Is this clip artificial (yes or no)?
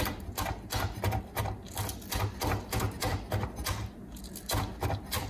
no